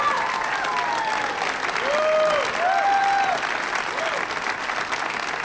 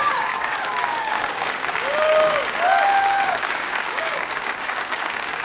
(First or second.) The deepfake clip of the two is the second